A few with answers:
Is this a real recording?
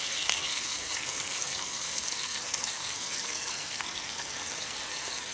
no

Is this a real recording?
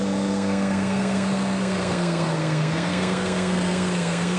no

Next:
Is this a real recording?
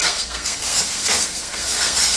no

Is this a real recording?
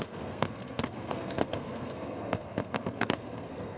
no